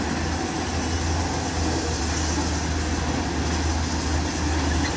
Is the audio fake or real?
real